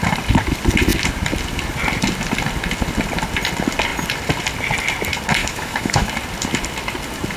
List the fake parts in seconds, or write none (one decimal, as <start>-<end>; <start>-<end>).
5.4-6.1